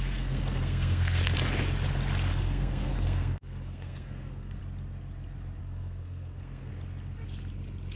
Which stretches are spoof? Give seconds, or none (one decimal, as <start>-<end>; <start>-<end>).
0.0-1.2; 2.4-4.6; 5.6-6.7